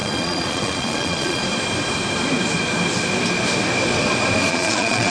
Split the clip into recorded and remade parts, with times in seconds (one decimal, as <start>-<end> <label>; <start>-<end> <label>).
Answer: 0.0-1.4 remade; 1.4-4.5 recorded; 4.5-5.1 remade